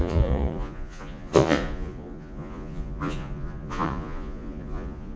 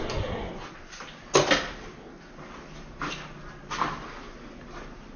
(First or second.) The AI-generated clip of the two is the first